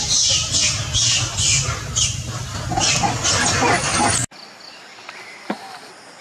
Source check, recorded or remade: recorded